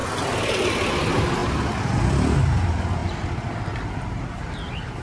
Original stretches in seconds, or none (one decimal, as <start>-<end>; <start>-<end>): 0.9-1.4; 2.4-5.0